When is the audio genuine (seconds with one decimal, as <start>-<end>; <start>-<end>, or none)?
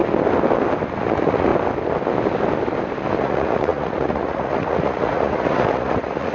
0.0-1.0; 1.5-3.2